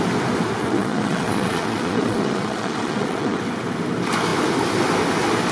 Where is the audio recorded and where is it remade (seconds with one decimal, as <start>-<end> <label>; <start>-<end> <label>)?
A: 0.0-0.6 recorded; 0.6-3.4 remade; 3.4-5.5 recorded